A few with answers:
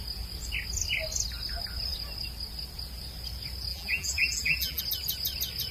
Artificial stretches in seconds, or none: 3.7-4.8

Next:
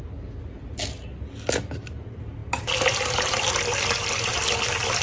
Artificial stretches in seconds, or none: none

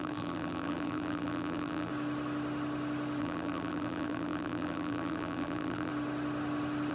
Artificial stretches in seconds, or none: 0.0-1.9; 3.2-5.9

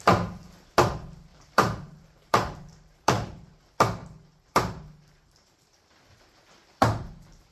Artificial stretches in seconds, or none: 1.3-3.6; 4.0-5.8